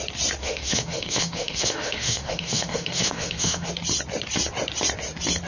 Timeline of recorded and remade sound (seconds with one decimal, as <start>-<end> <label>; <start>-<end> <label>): 0.0-0.4 recorded; 0.4-3.7 remade; 3.7-5.5 recorded